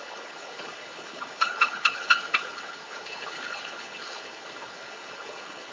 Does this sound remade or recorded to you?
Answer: remade